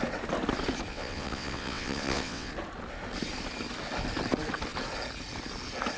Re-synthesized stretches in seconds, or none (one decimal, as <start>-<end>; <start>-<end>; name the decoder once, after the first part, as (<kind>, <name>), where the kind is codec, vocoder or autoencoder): 0.9-2.5 (vocoder, WaveNeXt)